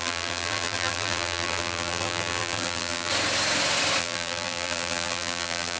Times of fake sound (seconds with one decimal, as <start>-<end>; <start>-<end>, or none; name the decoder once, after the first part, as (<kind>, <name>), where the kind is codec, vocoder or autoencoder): 0.0-3.1 (vocoder, BigVGAN v2); 4.0-5.8